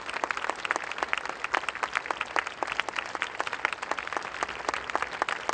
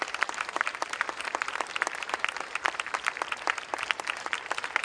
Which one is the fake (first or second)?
second